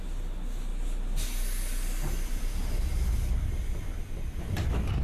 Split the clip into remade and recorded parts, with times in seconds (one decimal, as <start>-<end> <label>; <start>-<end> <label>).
0.0-5.0 recorded